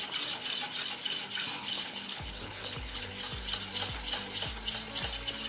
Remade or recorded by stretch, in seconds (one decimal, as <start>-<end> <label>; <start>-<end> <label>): 0.0-1.6 recorded; 1.6-3.1 remade; 3.1-5.5 recorded